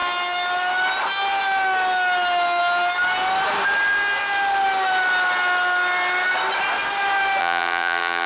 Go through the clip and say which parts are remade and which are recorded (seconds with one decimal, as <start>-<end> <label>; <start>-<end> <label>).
0.0-7.4 recorded; 7.4-8.3 remade

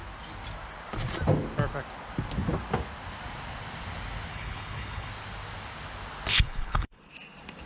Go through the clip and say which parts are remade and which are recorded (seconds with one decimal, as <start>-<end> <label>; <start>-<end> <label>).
0.0-4.3 recorded; 4.3-5.1 remade; 5.1-6.3 recorded; 6.3-7.1 remade; 7.1-7.7 recorded

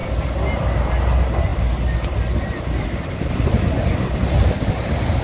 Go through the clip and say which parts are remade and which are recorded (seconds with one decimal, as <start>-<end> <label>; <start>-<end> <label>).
0.0-5.2 recorded

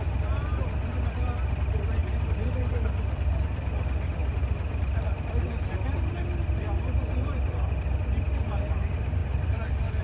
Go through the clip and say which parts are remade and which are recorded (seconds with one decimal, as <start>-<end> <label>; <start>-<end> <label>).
0.0-10.0 recorded

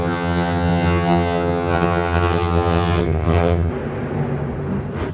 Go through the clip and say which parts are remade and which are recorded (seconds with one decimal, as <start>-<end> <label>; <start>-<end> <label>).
0.0-3.7 remade; 3.7-5.1 recorded

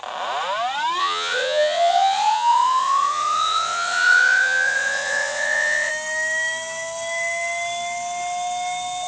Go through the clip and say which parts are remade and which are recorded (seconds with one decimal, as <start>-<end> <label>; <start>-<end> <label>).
0.0-1.0 recorded; 1.0-5.9 remade; 5.9-9.1 recorded

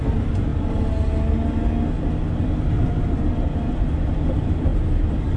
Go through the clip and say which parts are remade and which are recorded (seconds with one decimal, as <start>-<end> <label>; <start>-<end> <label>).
0.0-0.5 remade; 0.5-3.7 recorded; 3.7-5.4 remade

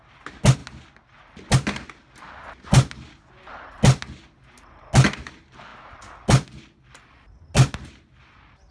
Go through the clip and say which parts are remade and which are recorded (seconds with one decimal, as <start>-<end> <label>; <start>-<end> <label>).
0.0-8.7 recorded